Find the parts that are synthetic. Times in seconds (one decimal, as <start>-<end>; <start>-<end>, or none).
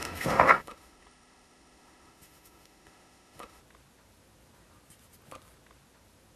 0.0-3.6